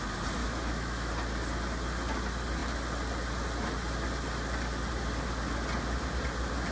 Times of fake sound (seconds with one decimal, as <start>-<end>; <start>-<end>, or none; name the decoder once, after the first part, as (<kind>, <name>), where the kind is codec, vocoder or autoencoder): 0.4-1.1 (autoencoder, DAC-VAE)